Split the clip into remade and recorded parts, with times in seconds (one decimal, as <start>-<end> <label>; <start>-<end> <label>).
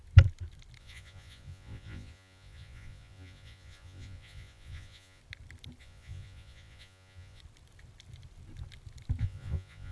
0.0-0.8 recorded; 0.8-5.2 remade; 5.2-5.8 recorded; 5.8-7.4 remade; 7.4-9.2 recorded; 9.2-9.9 remade